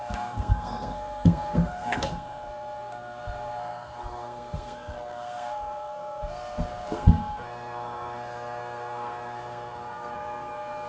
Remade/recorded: remade